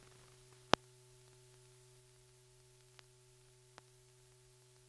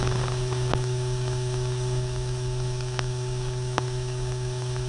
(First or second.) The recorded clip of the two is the first